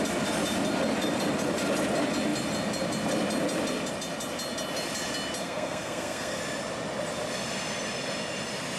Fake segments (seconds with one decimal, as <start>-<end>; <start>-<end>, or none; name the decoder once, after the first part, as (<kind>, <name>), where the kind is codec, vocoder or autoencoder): 5.4-6.4 (codec, SNAC)